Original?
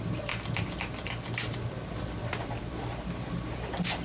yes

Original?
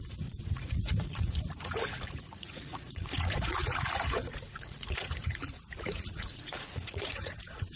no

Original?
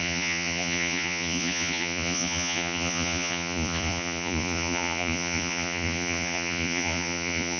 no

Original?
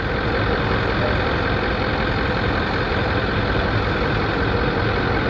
yes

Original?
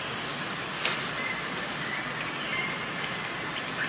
yes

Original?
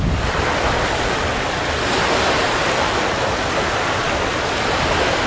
yes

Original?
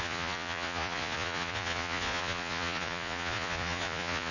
no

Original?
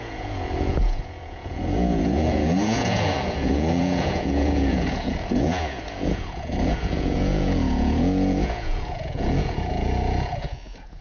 no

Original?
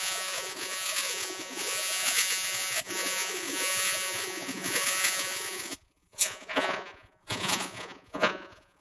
no